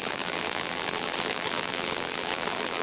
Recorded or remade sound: remade